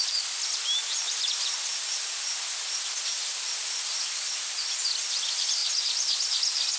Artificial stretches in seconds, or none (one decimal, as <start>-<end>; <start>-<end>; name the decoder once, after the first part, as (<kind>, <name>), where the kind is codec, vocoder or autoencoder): none